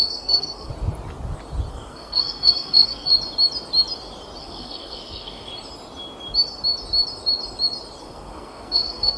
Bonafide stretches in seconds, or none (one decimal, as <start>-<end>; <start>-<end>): 0.7-1.7; 3.1-4.4; 5.5-8.0